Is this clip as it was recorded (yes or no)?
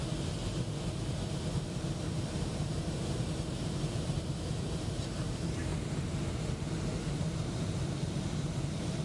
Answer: no